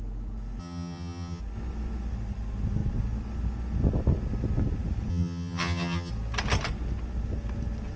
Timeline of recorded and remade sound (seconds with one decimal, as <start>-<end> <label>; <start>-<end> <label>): 0.0-0.6 recorded; 0.6-1.4 remade; 1.4-5.1 recorded; 5.1-6.1 remade; 6.1-8.0 recorded